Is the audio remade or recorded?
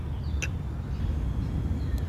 recorded